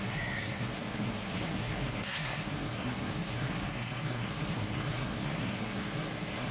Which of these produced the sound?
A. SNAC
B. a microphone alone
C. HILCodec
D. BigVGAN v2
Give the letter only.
A